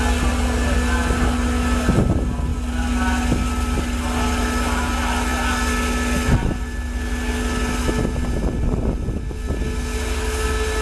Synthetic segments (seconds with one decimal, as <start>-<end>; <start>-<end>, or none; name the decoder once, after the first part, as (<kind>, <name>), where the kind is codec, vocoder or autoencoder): none